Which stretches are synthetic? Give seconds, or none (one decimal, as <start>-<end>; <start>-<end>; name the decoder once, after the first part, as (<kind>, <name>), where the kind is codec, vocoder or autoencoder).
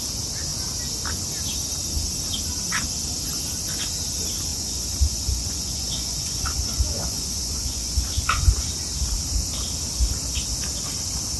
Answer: 4.5-8.5 (vocoder, Vocos)